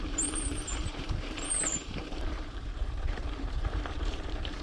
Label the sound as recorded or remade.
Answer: remade